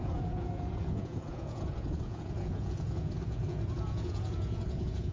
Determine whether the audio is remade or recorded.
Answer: remade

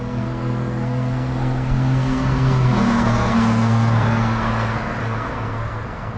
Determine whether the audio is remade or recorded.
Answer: remade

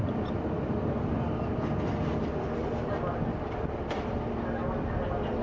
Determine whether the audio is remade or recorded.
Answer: recorded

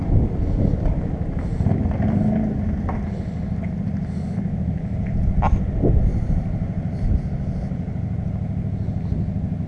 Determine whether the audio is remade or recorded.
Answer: recorded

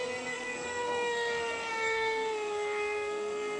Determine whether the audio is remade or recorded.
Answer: remade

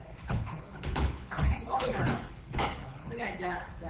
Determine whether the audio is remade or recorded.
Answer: remade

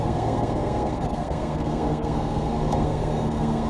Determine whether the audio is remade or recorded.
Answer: remade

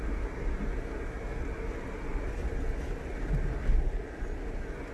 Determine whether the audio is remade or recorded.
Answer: recorded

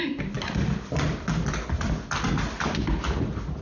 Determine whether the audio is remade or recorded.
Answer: recorded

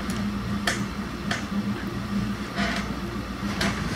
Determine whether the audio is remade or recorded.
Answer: recorded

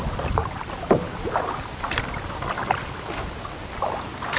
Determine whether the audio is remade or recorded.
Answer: recorded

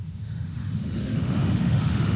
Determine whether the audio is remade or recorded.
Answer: remade